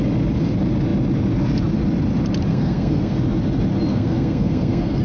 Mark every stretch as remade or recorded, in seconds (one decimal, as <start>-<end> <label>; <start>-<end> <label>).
0.0-2.5 recorded; 2.5-3.2 remade; 3.2-3.9 recorded; 3.9-5.0 remade